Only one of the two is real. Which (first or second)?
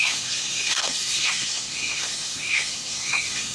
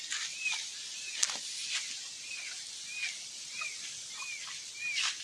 second